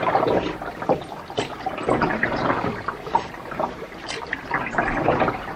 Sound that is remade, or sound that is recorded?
recorded